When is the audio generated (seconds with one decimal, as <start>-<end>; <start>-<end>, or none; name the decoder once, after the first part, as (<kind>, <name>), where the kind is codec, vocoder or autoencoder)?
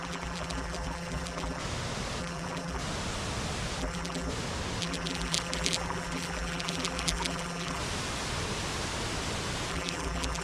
0.0-1.6 (vocoder, BigVGAN v2); 2.2-2.8; 3.8-4.3; 4.8-7.8; 9.7-10.4